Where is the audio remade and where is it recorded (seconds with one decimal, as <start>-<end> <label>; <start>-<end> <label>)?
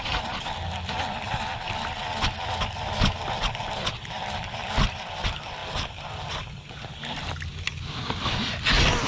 0.0-9.1 recorded